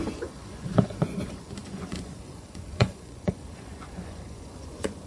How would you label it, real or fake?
fake